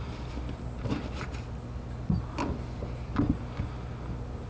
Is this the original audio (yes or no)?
yes